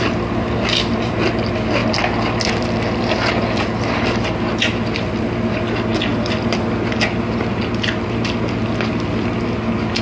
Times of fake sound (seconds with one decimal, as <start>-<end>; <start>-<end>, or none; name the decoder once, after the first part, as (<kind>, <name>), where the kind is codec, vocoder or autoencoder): none